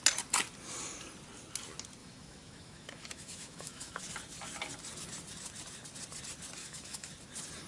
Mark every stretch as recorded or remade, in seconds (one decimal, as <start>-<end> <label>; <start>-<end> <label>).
0.0-2.0 recorded; 2.0-4.0 remade; 4.0-6.6 recorded; 6.6-7.1 remade; 7.1-7.7 recorded